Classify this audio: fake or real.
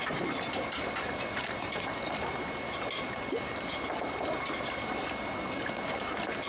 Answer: real